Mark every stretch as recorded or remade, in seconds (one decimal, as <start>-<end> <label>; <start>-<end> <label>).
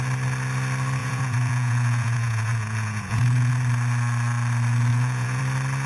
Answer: 0.0-1.0 recorded; 1.0-3.5 remade; 3.5-4.9 recorded; 4.9-5.4 remade; 5.4-5.9 recorded